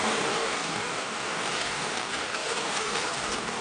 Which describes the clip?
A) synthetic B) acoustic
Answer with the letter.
A